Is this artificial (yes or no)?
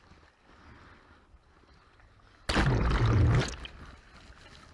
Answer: no